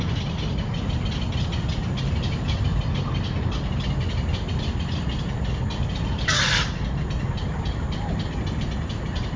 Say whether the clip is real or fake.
real